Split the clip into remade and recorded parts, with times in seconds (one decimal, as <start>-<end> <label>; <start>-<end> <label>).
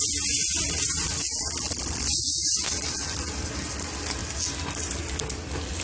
0.0-5.8 recorded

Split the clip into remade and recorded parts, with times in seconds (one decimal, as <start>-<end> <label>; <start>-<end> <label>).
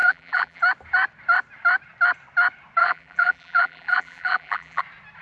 0.0-0.6 remade; 0.6-2.8 recorded; 2.8-4.8 remade; 4.8-5.2 recorded